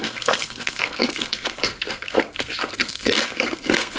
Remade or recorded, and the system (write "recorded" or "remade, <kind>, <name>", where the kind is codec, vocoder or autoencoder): remade, codec, SNAC